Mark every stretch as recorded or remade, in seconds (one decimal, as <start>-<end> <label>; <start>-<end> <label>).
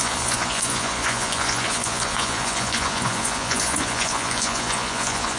0.0-5.4 remade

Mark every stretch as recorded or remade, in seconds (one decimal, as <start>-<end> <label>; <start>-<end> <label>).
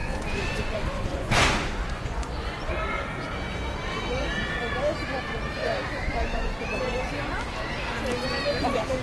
0.0-2.7 remade; 2.7-6.0 recorded; 6.0-6.6 remade; 6.6-9.0 recorded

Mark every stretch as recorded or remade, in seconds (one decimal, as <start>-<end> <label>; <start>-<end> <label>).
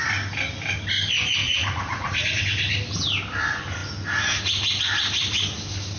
0.0-1.4 recorded; 1.4-2.4 remade; 2.4-6.0 recorded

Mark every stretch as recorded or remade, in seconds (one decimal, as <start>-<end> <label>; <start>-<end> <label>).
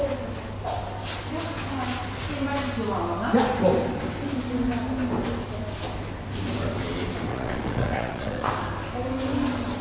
0.0-7.3 recorded; 7.3-8.5 remade; 8.5-9.8 recorded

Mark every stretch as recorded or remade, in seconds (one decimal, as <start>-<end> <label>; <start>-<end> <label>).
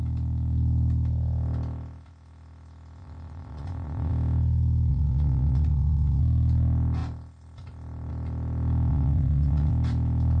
0.0-3.0 recorded; 3.0-4.1 remade; 4.1-4.9 recorded; 4.9-6.2 remade; 6.2-8.9 recorded; 8.9-9.7 remade; 9.7-10.4 recorded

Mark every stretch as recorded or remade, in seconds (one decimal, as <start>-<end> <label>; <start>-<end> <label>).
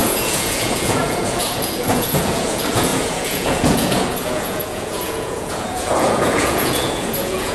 0.0-7.5 remade